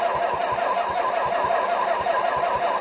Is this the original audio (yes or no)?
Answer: yes